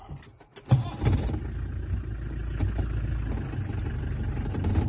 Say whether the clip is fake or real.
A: real